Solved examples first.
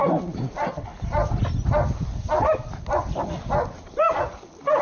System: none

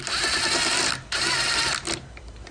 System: none